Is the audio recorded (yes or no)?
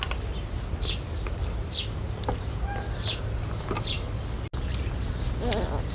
yes